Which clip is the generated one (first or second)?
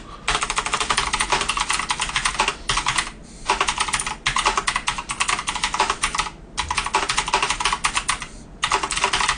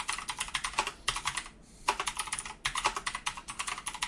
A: second